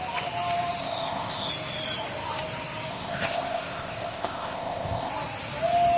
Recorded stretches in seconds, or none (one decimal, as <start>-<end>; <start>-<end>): 0.0-0.8; 1.5-2.9; 5.1-6.0